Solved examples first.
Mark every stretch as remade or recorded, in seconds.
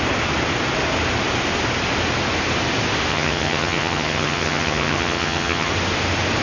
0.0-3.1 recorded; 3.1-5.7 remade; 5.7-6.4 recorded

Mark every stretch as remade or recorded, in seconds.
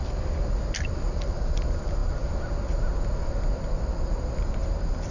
0.0-5.1 recorded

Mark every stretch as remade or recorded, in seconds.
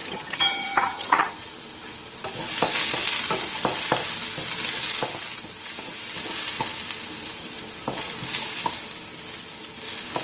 0.0-1.3 remade; 1.3-10.2 recorded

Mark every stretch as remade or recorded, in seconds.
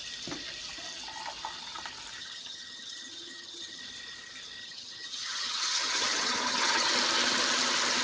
0.0-2.2 recorded; 2.2-3.8 remade; 3.8-4.6 recorded; 4.6-6.9 remade; 6.9-8.0 recorded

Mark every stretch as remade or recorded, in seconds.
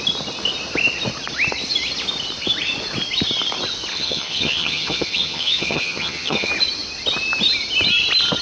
0.0-3.9 recorded; 3.9-6.5 remade; 6.5-8.4 recorded